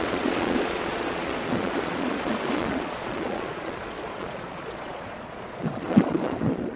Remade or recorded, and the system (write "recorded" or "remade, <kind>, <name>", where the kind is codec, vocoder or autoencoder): remade, vocoder, Vocos